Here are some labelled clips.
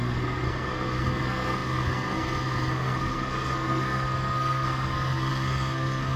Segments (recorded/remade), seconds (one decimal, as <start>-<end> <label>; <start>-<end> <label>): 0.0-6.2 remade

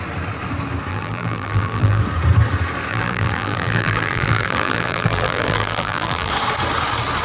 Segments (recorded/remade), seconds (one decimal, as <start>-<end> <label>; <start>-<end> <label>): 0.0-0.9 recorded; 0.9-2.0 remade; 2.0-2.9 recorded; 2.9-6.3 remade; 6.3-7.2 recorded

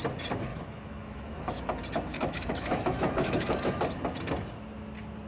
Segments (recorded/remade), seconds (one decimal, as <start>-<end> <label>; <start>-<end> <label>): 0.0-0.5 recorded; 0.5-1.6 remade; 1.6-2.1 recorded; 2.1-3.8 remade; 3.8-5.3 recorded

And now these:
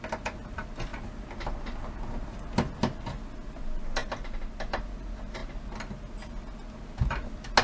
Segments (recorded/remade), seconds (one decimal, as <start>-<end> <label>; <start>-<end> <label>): 0.0-7.6 recorded

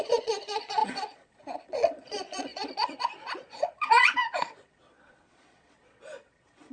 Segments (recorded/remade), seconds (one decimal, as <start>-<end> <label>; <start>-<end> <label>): 0.0-6.7 remade